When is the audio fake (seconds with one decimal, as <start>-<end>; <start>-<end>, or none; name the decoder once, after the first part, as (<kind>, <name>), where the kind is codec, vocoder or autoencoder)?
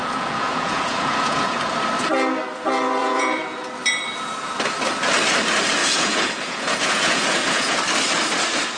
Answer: 0.0-1.5 (vocoder, Vocos); 3.0-3.7; 5.8-7.8